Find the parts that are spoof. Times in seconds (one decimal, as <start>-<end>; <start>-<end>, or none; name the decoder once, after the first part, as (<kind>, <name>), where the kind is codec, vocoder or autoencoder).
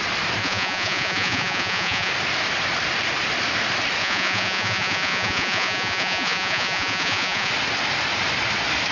0.4-2.1 (vocoder, Vocos); 4.0-7.5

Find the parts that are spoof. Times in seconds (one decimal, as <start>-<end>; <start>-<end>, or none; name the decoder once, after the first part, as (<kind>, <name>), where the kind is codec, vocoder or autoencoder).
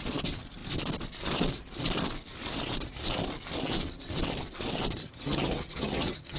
5.0-6.4 (vocoder, HiFi-GAN)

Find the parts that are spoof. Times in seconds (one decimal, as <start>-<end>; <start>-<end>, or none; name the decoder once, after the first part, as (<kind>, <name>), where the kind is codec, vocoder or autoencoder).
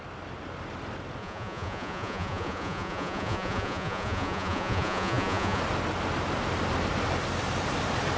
1.2-5.6 (vocoder, Vocos)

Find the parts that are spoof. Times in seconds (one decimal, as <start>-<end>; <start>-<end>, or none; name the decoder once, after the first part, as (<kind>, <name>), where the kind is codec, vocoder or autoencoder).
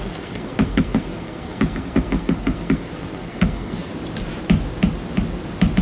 0.0-3.9 (codec, SNAC)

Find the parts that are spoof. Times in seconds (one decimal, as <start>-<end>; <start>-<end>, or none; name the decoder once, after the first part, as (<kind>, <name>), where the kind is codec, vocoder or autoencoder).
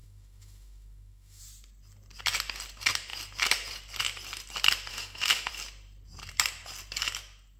0.0-1.4 (autoencoder, DAC-VAE); 4.9-5.5